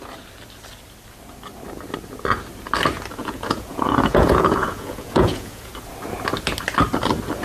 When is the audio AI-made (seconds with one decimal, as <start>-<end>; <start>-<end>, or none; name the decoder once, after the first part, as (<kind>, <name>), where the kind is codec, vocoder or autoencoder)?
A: 3.2-5.7 (vocoder, Vocos)